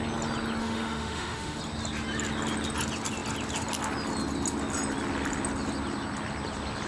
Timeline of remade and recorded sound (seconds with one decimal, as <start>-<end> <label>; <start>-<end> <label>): 0.0-0.6 recorded; 0.6-1.6 remade; 1.6-6.9 recorded